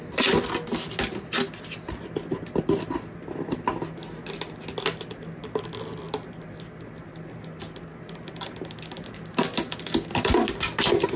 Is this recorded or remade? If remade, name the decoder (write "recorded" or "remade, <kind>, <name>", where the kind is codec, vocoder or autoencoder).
recorded